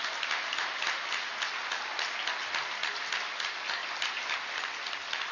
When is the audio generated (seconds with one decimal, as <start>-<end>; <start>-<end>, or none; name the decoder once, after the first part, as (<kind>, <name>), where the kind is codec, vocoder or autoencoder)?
none